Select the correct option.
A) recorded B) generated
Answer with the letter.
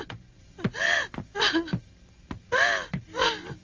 A